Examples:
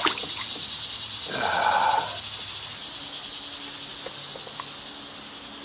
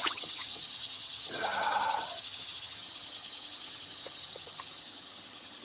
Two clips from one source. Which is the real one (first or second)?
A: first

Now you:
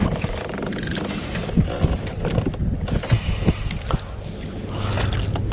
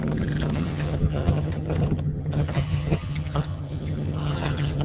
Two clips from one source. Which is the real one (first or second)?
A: first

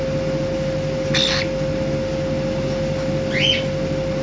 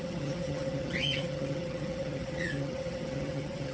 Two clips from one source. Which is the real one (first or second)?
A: first